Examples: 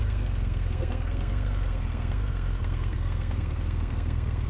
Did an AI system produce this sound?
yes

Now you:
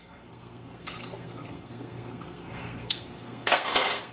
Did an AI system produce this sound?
yes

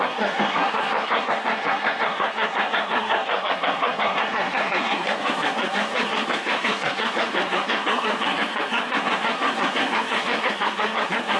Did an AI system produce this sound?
yes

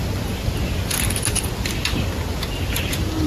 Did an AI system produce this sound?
no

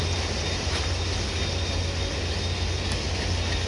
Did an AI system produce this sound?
no